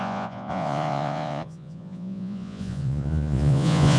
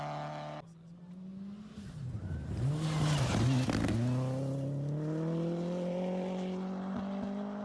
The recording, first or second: second